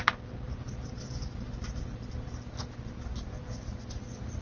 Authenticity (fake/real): real